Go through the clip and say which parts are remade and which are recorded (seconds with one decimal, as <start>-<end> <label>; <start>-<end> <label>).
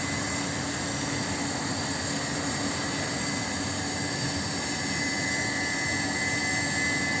0.0-7.2 recorded